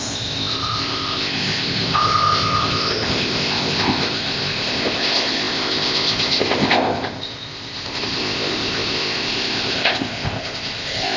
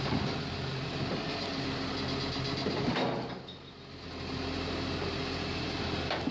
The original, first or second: second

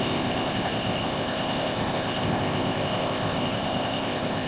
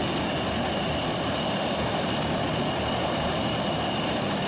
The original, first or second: second